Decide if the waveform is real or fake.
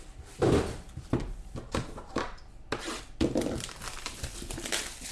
real